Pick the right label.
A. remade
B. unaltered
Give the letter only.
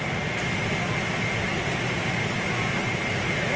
B